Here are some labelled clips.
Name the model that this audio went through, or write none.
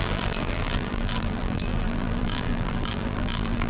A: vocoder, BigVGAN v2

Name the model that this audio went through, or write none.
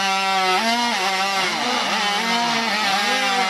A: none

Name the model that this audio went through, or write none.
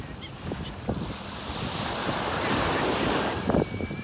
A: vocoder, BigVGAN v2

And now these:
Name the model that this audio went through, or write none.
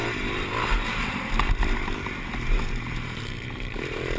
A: vocoder, BigVGAN v2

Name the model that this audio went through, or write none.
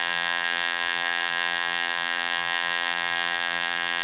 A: vocoder, BigVGAN v2